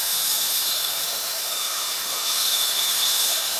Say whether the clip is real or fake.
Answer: fake